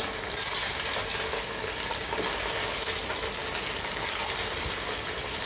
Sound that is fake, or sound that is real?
real